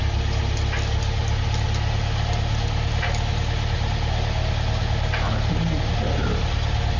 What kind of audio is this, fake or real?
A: real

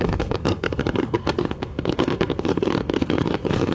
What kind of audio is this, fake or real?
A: fake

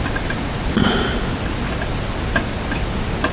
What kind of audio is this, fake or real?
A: real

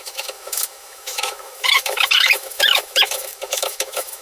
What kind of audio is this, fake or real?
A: fake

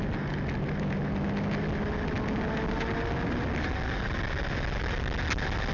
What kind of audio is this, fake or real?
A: real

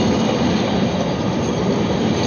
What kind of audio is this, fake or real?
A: real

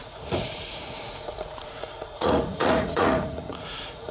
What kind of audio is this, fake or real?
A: fake